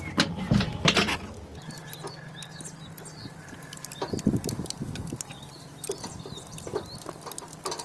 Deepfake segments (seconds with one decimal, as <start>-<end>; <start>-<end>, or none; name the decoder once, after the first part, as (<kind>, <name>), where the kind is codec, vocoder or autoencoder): none